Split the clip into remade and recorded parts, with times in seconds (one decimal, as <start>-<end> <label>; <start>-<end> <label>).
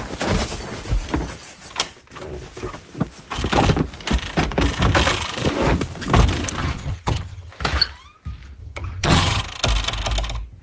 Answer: 0.0-6.6 recorded; 6.6-7.5 remade; 7.5-8.6 recorded; 8.6-9.4 remade; 9.4-10.6 recorded